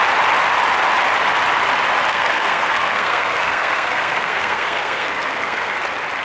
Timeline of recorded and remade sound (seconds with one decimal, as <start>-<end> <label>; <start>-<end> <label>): 0.0-2.1 recorded; 2.1-5.8 remade; 5.8-6.2 recorded